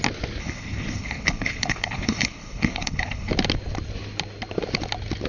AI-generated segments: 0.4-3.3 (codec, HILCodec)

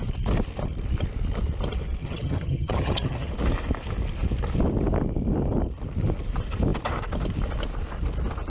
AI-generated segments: 2.0-3.3 (vocoder, HiFi-GAN)